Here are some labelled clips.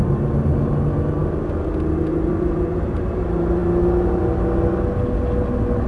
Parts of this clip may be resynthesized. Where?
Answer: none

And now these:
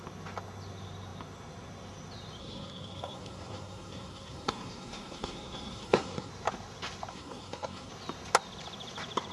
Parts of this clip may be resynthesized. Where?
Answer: 2.4-6.3; 7.1-7.9

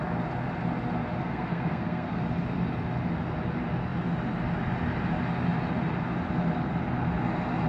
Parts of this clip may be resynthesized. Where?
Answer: 1.2-2.2

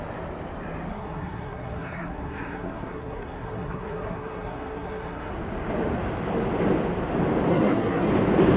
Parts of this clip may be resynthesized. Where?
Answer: 0.9-5.3; 7.5-8.1